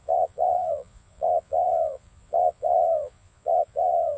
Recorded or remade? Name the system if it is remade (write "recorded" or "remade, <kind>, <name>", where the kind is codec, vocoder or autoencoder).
remade, vocoder, Vocos